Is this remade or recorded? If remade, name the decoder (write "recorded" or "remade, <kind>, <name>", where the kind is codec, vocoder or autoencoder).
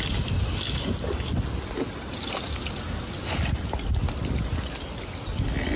recorded